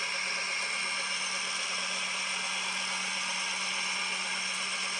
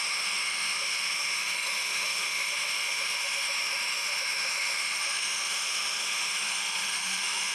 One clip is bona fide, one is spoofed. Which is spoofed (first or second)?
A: second